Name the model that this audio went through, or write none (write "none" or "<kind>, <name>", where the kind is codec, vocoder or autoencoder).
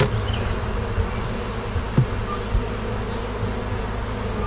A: none